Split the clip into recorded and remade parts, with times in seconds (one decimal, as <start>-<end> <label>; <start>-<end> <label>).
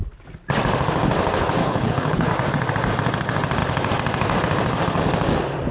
0.0-1.6 recorded; 1.6-2.3 remade; 2.3-5.7 recorded